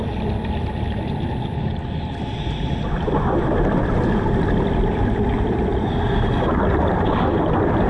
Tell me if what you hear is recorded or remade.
recorded